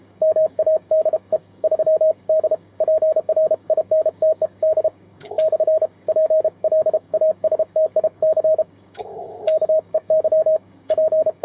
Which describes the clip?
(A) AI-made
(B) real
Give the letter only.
A